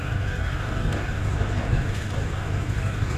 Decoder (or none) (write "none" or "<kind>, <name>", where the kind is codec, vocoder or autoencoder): codec, DAC